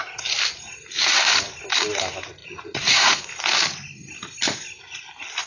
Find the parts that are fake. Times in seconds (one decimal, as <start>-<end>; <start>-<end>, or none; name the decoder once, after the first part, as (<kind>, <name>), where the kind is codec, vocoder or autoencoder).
2.4-3.3 (vocoder, Vocos)